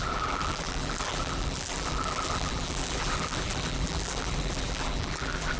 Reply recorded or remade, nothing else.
remade